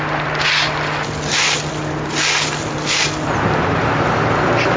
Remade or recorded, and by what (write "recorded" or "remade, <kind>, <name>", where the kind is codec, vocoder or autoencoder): recorded